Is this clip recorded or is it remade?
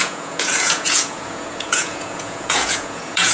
remade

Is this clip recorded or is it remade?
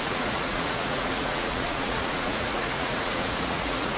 remade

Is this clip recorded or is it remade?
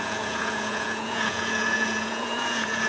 remade